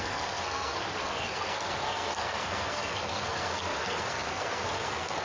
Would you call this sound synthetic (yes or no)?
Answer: yes